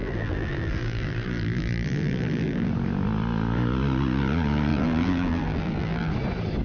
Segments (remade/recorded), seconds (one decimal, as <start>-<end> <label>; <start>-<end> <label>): 0.0-2.7 remade; 2.7-4.7 recorded; 4.7-6.1 remade; 6.1-6.6 recorded